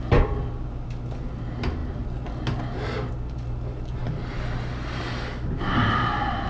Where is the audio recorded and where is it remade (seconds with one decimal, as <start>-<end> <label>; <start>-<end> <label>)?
0.0-6.5 recorded